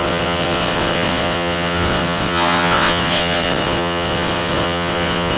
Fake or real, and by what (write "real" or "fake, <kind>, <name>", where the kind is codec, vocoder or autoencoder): fake, vocoder, WaveNeXt